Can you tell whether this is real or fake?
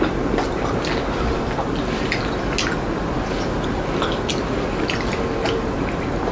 real